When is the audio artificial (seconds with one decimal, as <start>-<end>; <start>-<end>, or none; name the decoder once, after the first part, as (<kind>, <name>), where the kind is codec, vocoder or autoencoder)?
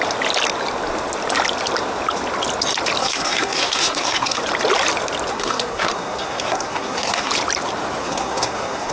3.0-4.4 (codec, SNAC); 5.3-7.3; 8.0-8.9